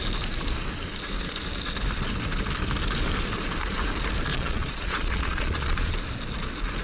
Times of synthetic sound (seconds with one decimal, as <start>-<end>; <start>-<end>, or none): 4.3-5.9